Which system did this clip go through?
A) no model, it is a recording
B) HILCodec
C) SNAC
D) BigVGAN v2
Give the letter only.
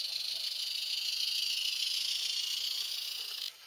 A